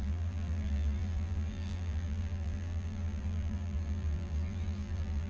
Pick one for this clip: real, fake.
fake